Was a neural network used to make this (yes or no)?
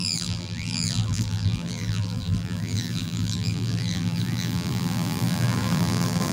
yes